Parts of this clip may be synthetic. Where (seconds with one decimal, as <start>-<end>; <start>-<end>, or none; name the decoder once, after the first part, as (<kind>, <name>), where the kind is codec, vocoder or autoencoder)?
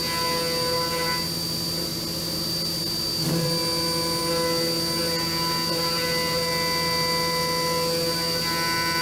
none